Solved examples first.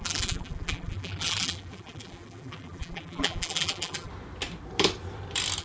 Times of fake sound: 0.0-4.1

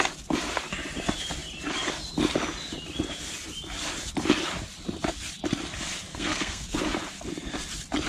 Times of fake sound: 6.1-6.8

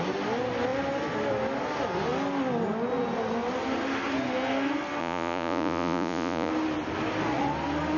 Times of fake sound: 5.0-6.5

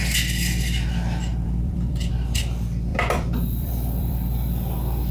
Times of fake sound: 1.3-2.1; 2.9-5.1

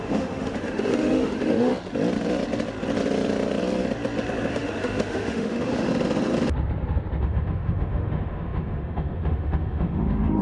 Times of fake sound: 0.0-1.7; 4.5-5.9; 7.2-10.4

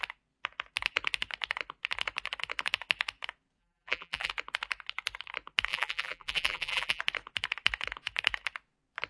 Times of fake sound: 3.6-4.3; 5.7-7.0

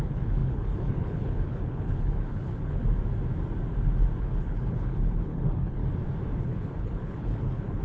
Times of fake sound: 0.0-2.8; 4.2-5.8; 6.4-7.8